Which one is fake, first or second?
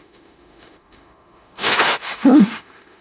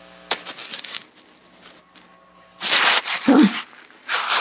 first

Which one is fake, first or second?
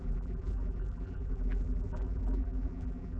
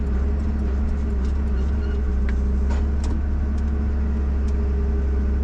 first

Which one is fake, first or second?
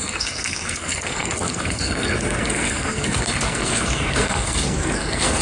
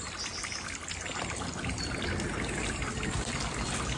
first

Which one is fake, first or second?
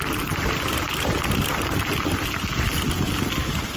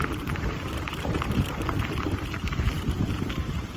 second